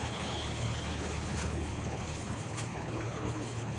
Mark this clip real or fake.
fake